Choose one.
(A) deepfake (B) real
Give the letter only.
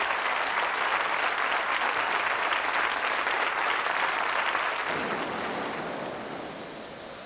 B